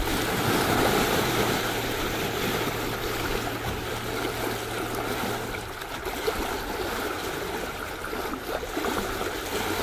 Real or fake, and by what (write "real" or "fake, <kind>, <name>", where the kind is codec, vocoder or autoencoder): real